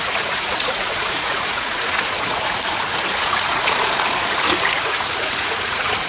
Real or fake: fake